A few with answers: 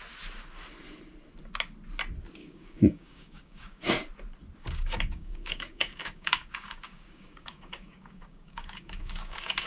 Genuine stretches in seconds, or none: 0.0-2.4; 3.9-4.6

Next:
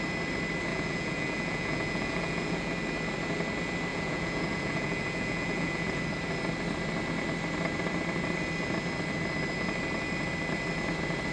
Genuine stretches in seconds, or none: 0.0-0.7; 2.7-3.9; 6.0-11.3